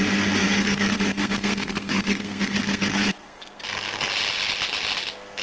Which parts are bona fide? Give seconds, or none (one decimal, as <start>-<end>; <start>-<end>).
0.0-0.4; 3.6-5.4